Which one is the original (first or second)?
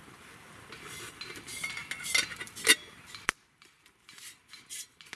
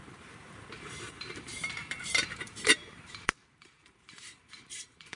first